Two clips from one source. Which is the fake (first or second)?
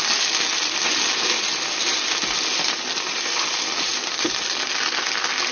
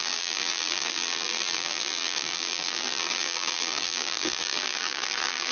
second